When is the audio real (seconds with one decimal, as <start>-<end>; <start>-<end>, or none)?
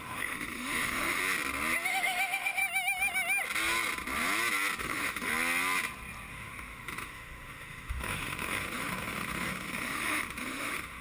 1.2-1.9; 2.6-4.8; 5.3-6.3